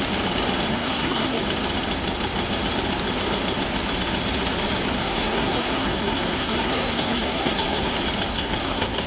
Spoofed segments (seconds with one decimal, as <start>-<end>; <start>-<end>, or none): 0.7-1.4; 5.0-7.9; 8.3-9.1

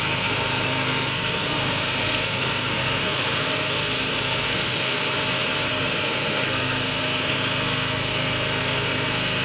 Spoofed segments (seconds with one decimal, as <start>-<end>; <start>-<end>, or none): 0.0-5.0; 5.7-9.4

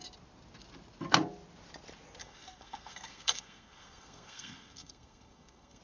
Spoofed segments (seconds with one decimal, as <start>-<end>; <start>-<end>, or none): 2.2-5.8

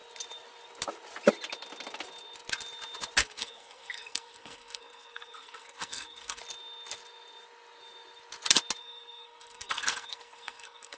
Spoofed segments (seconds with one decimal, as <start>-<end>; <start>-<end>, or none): 3.2-6.4; 8.8-11.0

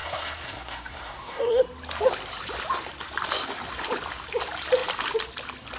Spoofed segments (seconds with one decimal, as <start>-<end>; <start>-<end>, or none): 0.0-1.6

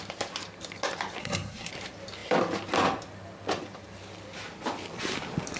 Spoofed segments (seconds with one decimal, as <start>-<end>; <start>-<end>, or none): 1.2-1.7